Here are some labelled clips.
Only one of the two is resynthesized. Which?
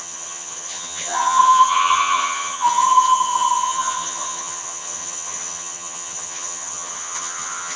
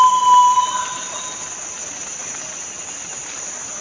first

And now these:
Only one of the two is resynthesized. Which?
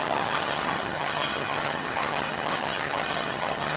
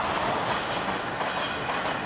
first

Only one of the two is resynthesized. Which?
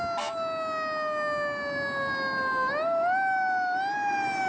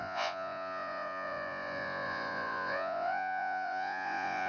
second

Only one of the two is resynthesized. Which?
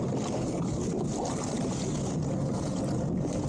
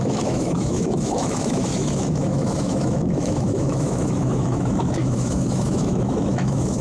second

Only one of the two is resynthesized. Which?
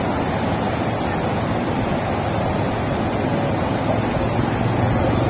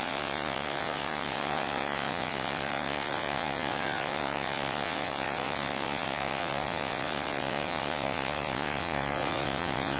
second